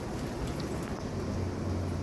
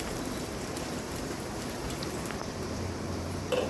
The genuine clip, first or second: first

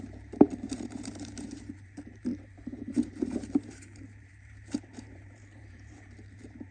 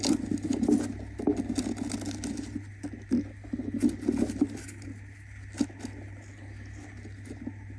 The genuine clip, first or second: second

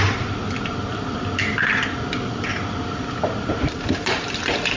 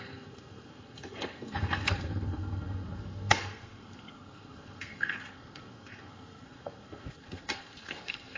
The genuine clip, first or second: first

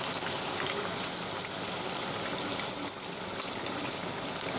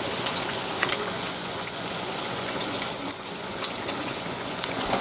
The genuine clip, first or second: first